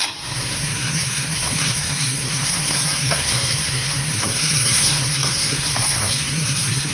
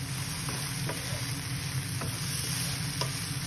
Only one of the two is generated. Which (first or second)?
first